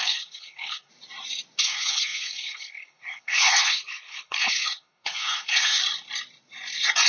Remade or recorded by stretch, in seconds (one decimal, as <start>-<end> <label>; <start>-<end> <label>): 0.0-0.9 remade; 0.9-1.6 recorded; 1.6-5.8 remade; 5.8-7.1 recorded